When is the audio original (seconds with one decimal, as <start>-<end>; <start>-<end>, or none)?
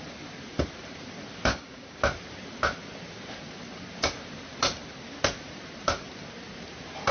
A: 0.0-1.5; 2.0-7.1